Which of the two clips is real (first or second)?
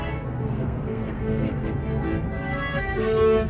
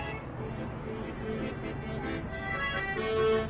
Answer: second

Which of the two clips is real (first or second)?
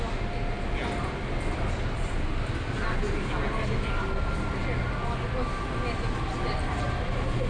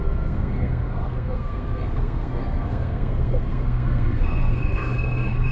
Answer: first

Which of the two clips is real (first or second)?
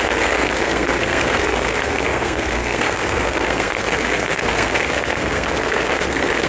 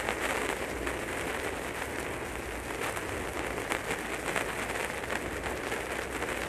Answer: second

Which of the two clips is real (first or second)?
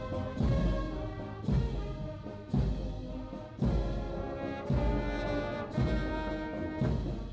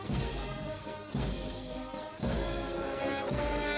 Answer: first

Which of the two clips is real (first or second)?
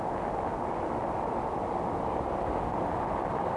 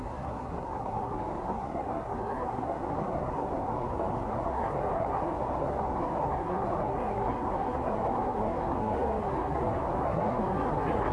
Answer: first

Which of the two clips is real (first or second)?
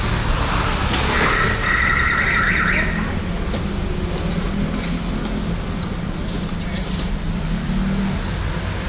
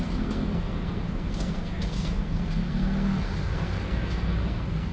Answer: first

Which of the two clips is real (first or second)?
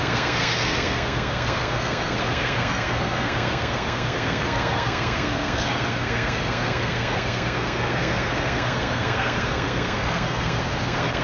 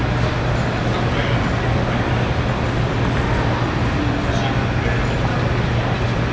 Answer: second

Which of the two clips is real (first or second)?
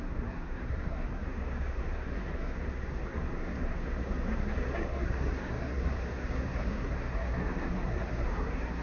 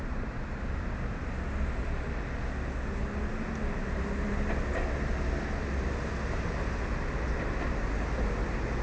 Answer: second